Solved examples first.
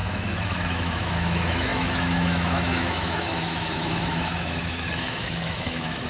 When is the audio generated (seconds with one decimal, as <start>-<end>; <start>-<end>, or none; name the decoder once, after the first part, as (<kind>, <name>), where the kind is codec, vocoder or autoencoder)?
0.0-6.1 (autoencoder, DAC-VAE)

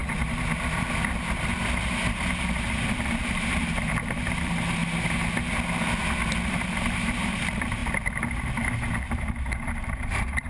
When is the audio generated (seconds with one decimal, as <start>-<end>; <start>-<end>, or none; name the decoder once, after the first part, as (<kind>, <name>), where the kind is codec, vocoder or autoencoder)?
2.9-4.8 (vocoder, BigVGAN v2); 6.3-7.8; 8.4-10.5

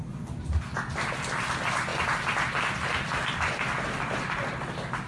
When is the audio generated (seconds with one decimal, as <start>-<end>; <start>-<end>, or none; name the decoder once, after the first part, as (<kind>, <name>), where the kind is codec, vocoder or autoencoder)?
none